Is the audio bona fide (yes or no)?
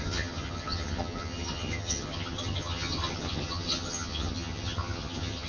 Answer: no